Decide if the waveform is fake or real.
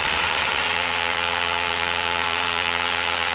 fake